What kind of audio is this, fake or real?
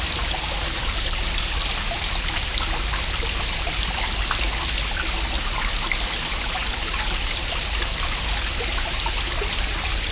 real